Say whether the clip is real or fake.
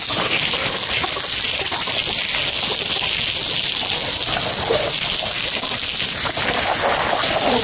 real